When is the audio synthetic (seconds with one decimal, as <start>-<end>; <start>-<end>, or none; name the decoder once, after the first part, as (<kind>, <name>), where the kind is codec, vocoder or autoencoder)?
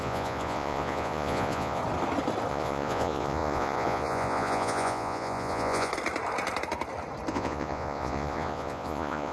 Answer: 0.0-1.8 (vocoder, Vocos); 2.5-5.9; 7.3-9.3